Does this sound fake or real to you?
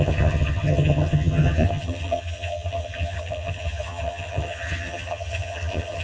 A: fake